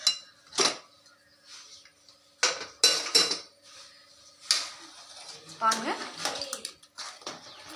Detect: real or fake real